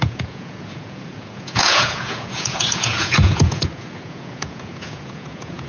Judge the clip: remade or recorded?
remade